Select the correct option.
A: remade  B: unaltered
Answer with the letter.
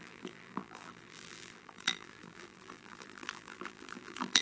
A